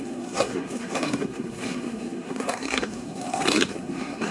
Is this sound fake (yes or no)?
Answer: yes